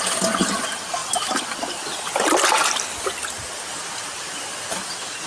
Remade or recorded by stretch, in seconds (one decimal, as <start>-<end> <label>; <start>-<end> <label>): 0.0-1.0 recorded; 1.0-4.2 remade; 4.2-5.3 recorded